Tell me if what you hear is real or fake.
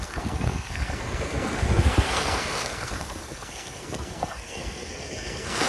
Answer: fake